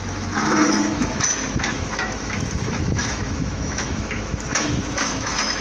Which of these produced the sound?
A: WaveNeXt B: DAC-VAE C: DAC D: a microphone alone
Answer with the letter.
B